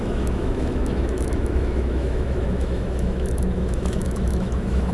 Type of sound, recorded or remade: remade